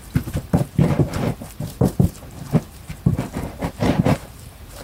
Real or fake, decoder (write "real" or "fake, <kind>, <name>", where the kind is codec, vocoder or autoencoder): fake, vocoder, BigVGAN v2